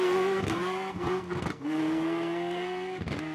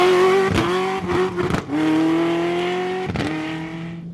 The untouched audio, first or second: second